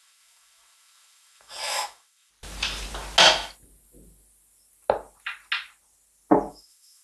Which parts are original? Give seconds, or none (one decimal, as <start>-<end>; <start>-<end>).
2.3-6.5